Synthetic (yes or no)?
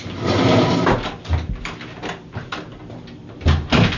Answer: no